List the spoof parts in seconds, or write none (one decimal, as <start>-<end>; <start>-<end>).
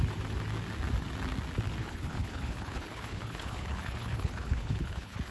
1.8-5.3